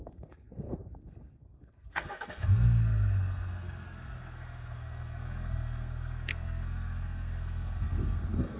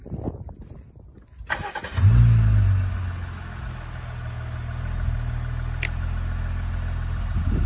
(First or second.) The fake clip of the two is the first